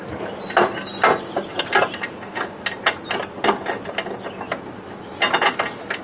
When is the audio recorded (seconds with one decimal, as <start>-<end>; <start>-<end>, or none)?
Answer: 0.0-6.0